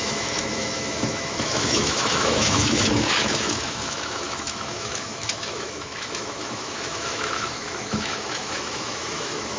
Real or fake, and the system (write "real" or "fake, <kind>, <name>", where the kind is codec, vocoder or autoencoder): fake, autoencoder, DAC-VAE